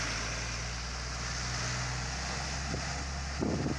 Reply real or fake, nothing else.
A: real